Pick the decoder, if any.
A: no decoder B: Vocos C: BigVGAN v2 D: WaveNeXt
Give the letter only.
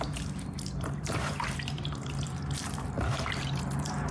C